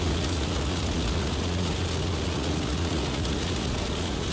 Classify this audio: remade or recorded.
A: remade